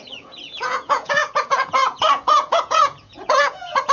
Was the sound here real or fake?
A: fake